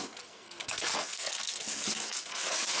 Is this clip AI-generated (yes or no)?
yes